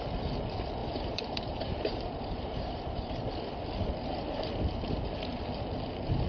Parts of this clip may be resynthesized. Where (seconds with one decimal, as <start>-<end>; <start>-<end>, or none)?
0.8-3.3